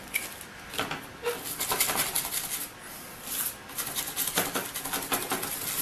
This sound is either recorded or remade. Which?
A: recorded